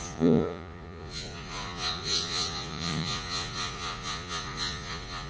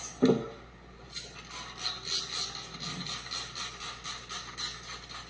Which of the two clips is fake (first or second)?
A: first